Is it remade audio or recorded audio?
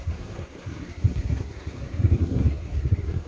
remade